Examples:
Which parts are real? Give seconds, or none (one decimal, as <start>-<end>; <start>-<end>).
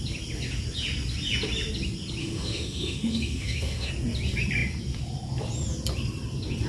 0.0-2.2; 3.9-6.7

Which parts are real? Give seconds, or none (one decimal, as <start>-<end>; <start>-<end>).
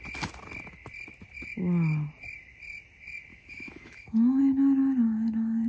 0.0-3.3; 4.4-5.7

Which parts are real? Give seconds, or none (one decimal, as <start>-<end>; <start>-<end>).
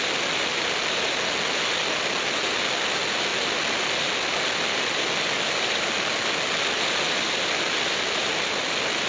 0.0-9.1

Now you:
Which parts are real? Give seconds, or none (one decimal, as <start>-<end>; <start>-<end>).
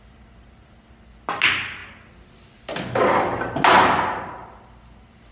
0.0-5.3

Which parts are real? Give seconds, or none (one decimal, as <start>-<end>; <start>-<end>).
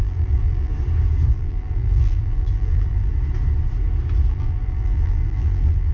0.7-1.3; 3.1-4.3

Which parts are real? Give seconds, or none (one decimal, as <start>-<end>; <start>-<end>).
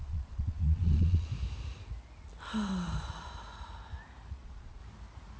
1.3-4.3; 4.8-5.4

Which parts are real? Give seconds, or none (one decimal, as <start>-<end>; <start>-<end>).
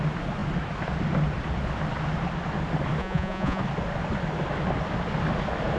0.0-3.0; 3.6-5.8